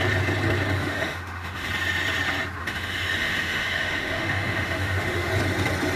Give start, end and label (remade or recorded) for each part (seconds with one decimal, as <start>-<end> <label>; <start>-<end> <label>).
0.0-0.8 recorded; 0.8-1.7 remade; 1.7-2.6 recorded; 2.6-5.3 remade; 5.3-6.0 recorded